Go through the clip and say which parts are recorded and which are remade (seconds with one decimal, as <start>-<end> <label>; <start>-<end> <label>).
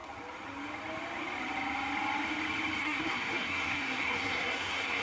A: 0.0-2.8 recorded; 2.8-5.0 remade